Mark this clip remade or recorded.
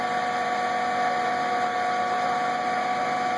recorded